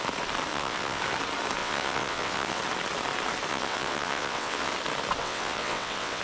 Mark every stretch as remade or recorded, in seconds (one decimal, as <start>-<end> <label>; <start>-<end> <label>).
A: 0.0-0.5 recorded; 0.5-1.0 remade; 1.0-1.6 recorded; 1.6-2.6 remade; 2.6-3.5 recorded; 3.5-4.7 remade; 4.7-5.2 recorded; 5.2-6.2 remade